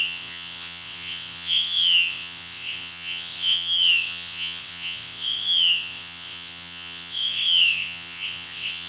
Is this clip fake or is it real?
fake